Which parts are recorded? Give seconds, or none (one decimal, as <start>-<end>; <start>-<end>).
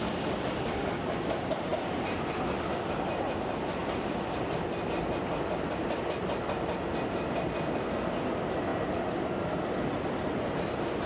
0.0-3.8; 4.5-8.7; 9.6-11.1